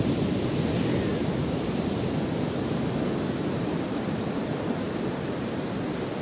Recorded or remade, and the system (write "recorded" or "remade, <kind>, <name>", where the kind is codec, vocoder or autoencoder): recorded